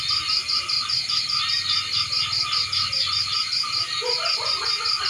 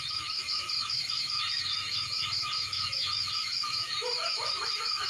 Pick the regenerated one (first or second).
second